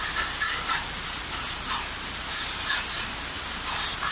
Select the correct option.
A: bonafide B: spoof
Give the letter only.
A